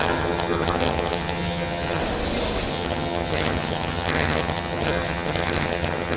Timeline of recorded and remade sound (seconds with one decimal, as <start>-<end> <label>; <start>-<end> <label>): 0.0-2.0 remade; 2.0-2.7 recorded; 2.7-6.2 remade